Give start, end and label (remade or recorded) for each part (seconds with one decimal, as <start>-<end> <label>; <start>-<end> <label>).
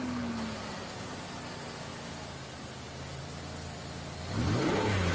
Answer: 0.0-5.1 recorded